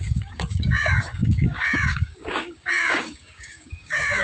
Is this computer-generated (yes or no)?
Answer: yes